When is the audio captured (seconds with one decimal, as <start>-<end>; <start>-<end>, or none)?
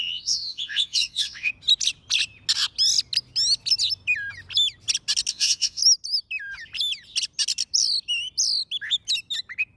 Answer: 1.5-5.3; 5.8-9.8